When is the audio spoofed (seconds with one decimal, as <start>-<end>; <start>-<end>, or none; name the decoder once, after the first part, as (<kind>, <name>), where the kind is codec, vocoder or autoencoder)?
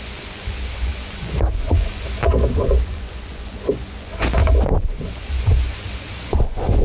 0.0-6.8 (vocoder, Vocos)